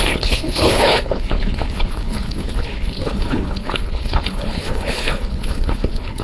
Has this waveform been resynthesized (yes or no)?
yes